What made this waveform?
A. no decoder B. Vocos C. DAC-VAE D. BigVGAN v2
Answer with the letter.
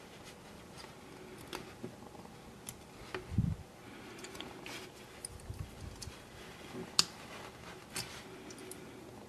A